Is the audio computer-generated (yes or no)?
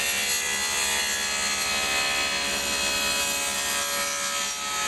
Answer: no